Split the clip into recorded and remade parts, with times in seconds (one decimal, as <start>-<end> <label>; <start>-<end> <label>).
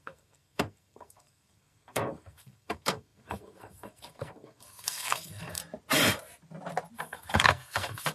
0.0-5.6 remade; 5.6-7.0 recorded; 7.0-8.1 remade